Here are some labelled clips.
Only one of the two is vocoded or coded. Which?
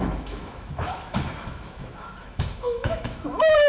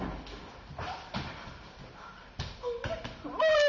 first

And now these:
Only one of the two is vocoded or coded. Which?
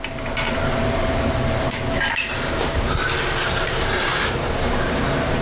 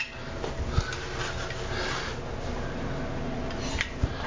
first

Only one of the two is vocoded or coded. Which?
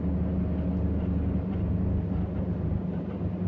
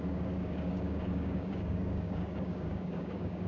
second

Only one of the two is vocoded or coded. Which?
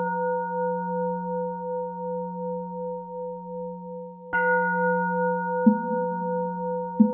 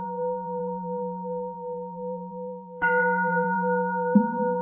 second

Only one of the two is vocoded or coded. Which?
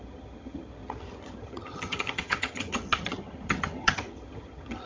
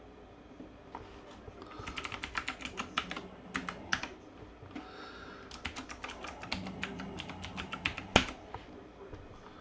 first